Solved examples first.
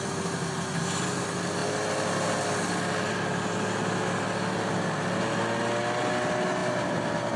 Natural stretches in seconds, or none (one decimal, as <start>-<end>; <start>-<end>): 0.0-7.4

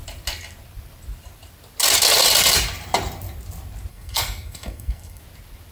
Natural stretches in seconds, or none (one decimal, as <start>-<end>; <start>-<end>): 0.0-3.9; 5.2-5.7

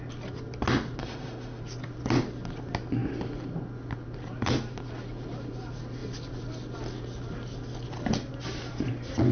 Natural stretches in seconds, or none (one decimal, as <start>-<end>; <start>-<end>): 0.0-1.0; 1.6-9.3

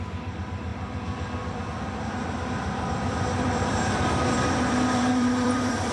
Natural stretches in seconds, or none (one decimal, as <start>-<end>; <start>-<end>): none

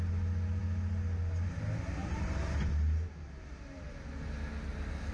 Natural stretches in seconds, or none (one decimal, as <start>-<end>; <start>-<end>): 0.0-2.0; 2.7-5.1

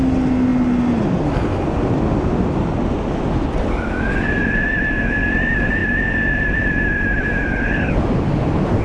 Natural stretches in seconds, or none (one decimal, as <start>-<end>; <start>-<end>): 0.0-8.8

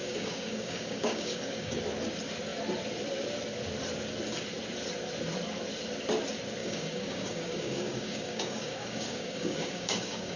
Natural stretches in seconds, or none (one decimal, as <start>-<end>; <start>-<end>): 1.8-6.6